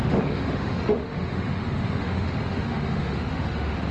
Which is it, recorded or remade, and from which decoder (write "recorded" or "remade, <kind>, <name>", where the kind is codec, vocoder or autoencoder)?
remade, autoencoder, DAC-VAE